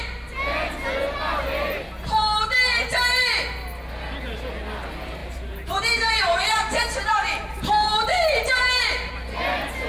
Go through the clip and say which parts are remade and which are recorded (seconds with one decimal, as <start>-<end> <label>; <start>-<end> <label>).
0.0-5.2 recorded; 5.2-9.1 remade; 9.1-9.9 recorded